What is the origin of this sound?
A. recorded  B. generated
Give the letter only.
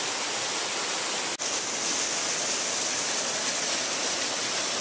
A